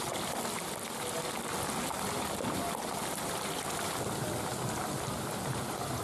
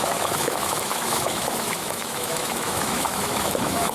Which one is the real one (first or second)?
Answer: first